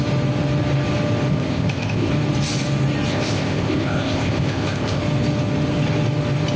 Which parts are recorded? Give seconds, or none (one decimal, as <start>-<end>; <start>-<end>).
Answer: 0.0-1.3; 2.1-3.1; 5.0-6.6